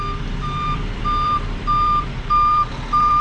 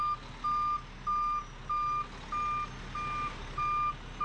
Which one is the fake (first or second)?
first